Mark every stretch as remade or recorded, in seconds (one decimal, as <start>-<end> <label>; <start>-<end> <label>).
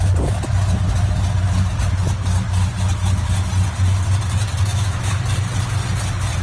0.0-4.7 recorded; 4.7-5.2 remade; 5.2-6.4 recorded